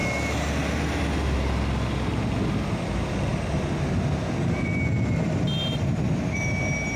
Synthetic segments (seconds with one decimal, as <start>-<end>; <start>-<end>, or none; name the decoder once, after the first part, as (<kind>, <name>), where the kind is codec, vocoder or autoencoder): none

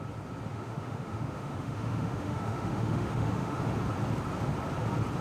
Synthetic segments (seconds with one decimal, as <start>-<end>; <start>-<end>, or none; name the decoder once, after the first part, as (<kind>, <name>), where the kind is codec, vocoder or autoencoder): 0.5-3.6 (autoencoder, DAC-VAE)

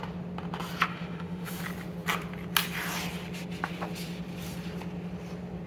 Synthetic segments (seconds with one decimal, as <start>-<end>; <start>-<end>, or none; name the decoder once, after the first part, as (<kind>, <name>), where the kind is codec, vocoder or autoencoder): 0.9-1.6 (autoencoder, DAC-VAE)

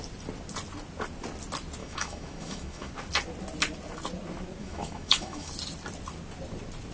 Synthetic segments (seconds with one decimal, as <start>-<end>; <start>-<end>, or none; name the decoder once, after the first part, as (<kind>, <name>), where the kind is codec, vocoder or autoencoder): 1.8-2.9 (autoencoder, DAC-VAE); 4.6-5.5

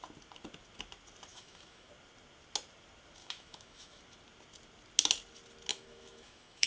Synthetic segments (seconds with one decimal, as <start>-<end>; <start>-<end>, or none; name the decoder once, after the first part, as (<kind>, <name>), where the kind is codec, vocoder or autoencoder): 1.3-1.9 (autoencoder, DAC-VAE); 3.2-4.0; 5.7-6.7